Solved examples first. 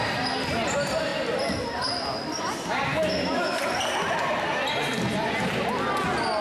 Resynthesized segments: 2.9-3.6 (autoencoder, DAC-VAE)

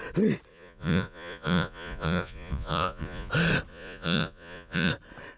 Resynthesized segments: 0.5-3.3 (vocoder, Vocos); 3.7-4.9

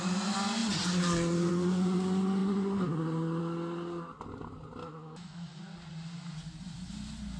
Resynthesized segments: 4.8-5.6 (autoencoder, DAC-VAE)

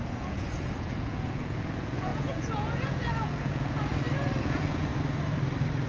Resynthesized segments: 0.0-3.9 (vocoder, Vocos); 4.4-4.9

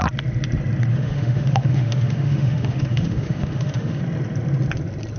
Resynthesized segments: 0.9-4.0 (autoencoder, DAC-VAE)

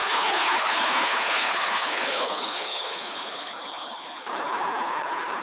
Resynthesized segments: 0.0-5.4 (codec, HILCodec)

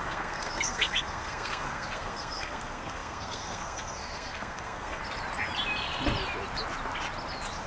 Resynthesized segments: 0.0-5.0 (codec, SNAC)